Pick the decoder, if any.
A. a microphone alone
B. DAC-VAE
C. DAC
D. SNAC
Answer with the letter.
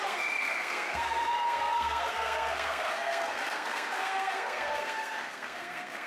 D